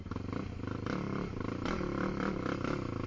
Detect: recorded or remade recorded